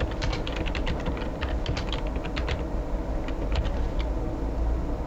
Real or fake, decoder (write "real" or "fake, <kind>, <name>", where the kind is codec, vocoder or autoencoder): real